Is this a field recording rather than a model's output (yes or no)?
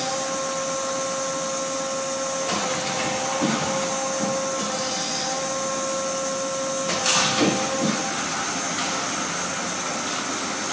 yes